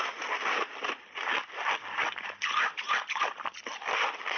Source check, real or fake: real